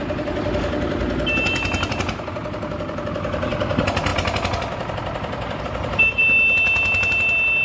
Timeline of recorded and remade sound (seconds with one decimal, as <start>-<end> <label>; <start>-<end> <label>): 0.0-2.4 recorded; 2.4-3.1 remade; 3.1-7.6 recorded